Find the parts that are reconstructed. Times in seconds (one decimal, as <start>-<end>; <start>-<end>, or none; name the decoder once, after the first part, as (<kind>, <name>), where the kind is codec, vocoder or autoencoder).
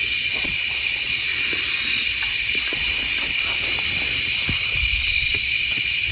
0.0-1.3 (vocoder, Vocos); 5.0-6.1